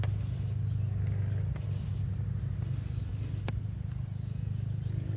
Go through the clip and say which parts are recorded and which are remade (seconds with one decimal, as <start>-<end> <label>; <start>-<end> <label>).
0.0-5.2 recorded